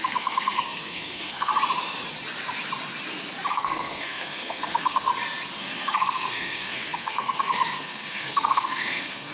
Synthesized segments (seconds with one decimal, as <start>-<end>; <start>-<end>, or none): 0.0-1.5; 3.5-5.1; 5.6-9.3